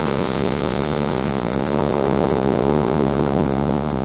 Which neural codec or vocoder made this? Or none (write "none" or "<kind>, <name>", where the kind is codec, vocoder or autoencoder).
vocoder, Vocos